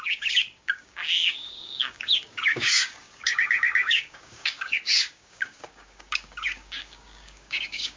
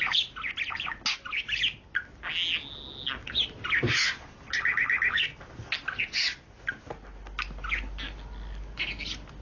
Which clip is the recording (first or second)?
second